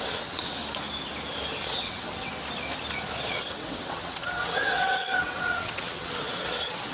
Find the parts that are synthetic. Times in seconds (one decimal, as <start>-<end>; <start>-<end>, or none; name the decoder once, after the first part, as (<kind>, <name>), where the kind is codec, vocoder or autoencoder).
0.0-0.6 (vocoder, WaveNeXt); 1.6-2.3; 3.3-6.9